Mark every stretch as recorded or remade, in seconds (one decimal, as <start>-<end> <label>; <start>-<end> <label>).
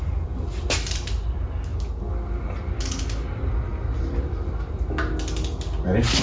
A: 0.0-6.2 recorded